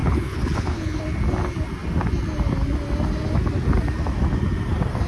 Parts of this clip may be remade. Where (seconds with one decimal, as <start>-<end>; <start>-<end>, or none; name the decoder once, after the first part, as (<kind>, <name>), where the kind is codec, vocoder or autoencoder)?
0.0-1.0 (codec, HILCodec)